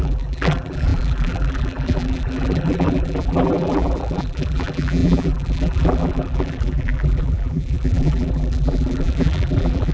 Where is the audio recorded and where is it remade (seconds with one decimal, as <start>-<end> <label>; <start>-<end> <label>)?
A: 0.0-9.9 remade